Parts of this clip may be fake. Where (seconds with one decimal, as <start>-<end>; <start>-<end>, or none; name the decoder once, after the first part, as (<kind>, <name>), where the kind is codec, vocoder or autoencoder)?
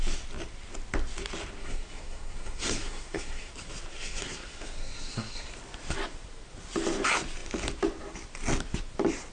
1.6-3.5 (codec, SNAC); 3.9-5.5